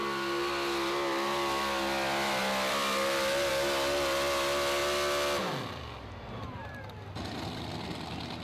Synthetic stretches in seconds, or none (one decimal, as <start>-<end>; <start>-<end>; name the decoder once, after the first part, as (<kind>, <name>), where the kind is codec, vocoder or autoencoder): none